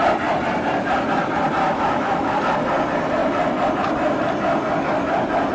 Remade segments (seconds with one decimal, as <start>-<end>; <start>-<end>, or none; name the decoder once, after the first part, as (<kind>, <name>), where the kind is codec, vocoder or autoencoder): 1.6-2.4 (autoencoder, DAC-VAE)